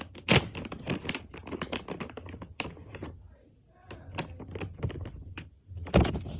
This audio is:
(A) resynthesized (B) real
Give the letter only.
B